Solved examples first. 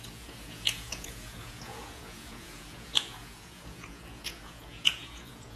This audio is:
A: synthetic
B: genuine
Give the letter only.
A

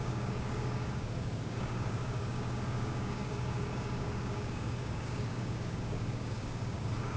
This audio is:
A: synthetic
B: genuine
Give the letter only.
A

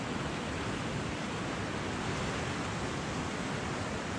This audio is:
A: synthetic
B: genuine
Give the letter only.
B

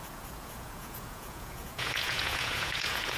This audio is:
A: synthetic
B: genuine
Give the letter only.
A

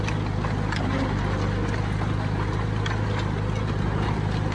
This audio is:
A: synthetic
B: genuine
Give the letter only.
B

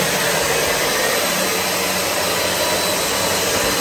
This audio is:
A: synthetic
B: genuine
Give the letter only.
B